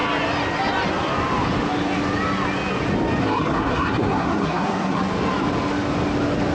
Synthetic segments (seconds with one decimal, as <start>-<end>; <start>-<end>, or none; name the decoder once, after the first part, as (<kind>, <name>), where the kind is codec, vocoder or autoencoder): 3.2-5.0 (codec, SNAC)